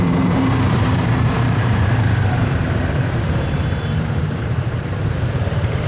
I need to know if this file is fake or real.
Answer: fake